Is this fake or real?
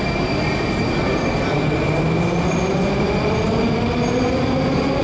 real